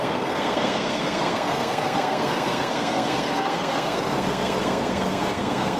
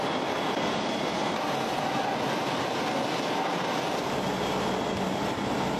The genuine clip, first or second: second